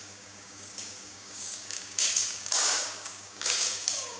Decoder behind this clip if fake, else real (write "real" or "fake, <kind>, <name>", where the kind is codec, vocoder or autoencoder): fake, codec, DAC